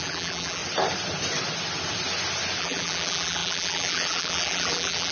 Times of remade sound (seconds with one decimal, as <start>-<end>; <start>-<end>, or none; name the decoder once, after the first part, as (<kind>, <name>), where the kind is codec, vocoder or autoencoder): 0.0-0.6 (vocoder, BigVGAN v2); 2.6-5.1